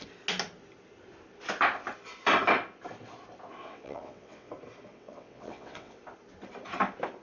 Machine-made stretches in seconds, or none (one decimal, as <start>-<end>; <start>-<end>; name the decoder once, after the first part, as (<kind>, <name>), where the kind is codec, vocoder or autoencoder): 3.6-4.5 (vocoder, WaveNeXt); 4.9-6.0